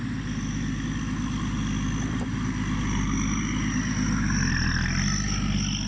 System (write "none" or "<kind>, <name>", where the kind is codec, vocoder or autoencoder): none